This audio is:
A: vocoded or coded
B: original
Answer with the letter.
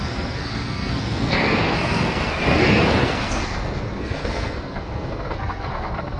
A